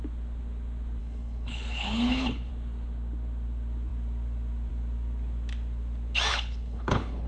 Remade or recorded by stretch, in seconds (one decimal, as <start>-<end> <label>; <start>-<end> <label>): 0.0-1.0 recorded; 1.0-2.5 remade; 2.5-6.3 recorded; 6.3-7.3 remade